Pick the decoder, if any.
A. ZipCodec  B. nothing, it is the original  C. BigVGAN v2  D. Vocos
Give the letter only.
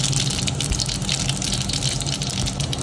B